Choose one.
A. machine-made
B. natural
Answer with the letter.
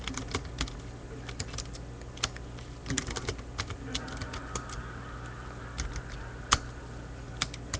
B